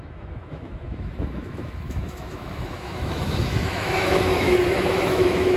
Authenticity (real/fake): fake